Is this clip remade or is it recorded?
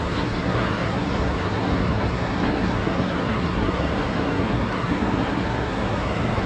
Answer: remade